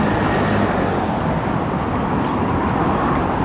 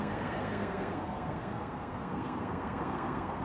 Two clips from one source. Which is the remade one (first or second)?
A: second